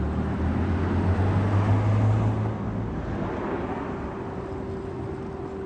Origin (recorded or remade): recorded